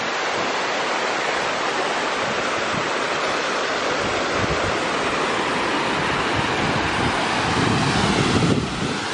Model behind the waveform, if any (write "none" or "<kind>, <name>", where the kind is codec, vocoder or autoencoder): none